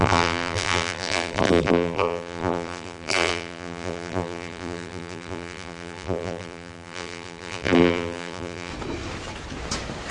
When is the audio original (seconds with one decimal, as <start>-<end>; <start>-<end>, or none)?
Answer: 8.7-10.1